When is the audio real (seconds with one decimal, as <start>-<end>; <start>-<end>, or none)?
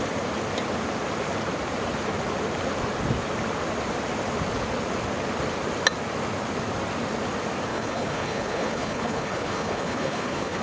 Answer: 0.0-7.7